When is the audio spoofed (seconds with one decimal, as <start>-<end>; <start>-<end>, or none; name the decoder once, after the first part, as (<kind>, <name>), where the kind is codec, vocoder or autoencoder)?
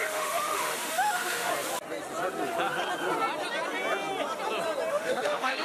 0.0-1.5 (autoencoder, DAC-VAE); 4.9-5.6